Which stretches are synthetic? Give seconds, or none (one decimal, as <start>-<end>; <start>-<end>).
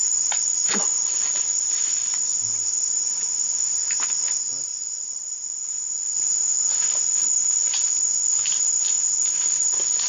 0.0-2.2; 4.7-5.4